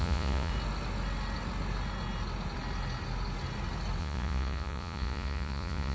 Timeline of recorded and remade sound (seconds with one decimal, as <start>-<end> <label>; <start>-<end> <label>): 0.0-0.5 remade; 0.5-4.0 recorded; 4.0-5.9 remade